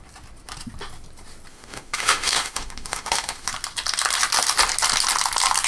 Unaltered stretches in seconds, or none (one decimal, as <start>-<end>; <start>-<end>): 0.0-1.5; 3.5-5.7